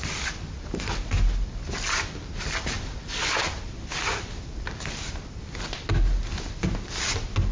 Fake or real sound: real